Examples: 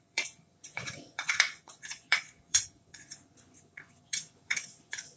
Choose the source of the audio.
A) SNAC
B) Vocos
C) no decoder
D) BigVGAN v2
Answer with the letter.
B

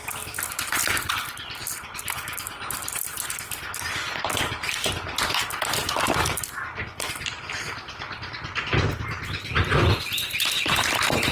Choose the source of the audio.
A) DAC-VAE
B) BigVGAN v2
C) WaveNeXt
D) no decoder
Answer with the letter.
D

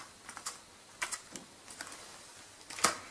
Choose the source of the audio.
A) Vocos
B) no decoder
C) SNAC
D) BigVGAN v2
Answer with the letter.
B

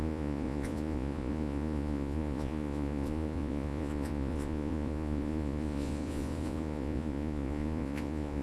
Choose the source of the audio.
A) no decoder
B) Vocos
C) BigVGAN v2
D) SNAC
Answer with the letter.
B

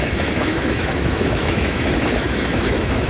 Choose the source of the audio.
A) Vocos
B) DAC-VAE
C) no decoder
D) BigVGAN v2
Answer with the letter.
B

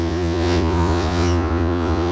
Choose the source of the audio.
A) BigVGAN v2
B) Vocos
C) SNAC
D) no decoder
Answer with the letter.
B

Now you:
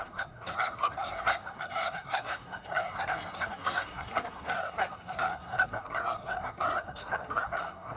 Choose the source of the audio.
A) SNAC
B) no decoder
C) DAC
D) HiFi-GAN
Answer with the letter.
A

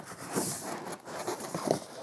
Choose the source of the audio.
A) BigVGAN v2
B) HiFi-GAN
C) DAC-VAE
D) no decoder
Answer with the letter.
D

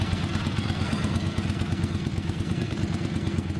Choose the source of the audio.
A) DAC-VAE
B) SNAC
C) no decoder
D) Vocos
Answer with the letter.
B